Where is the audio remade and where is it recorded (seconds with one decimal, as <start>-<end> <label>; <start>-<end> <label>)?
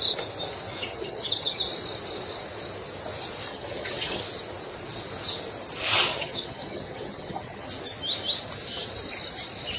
0.0-0.9 recorded; 0.9-1.6 remade; 1.6-3.5 recorded; 3.5-4.2 remade; 4.2-6.1 recorded; 6.1-7.7 remade; 7.7-9.8 recorded